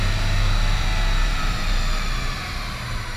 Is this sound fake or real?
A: fake